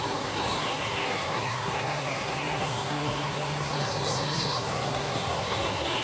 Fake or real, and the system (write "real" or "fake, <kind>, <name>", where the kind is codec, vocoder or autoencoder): fake, codec, SNAC